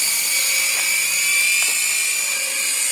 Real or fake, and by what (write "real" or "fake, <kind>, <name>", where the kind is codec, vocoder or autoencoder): real